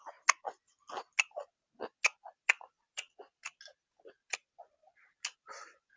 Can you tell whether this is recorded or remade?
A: recorded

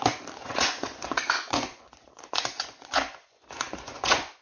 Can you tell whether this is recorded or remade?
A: remade